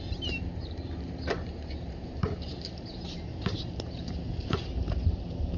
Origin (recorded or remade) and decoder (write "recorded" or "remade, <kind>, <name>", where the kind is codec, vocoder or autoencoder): remade, vocoder, BigVGAN v2